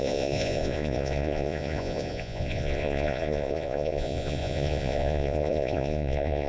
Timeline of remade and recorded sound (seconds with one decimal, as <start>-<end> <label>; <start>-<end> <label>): 0.0-6.5 remade